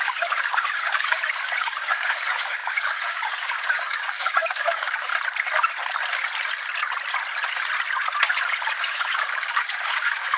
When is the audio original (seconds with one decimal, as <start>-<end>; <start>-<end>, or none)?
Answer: 5.1-8.8